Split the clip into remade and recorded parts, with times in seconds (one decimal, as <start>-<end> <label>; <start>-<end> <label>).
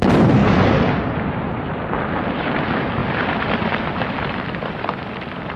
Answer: 0.0-5.6 recorded